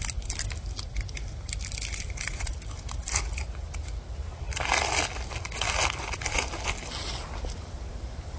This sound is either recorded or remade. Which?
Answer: recorded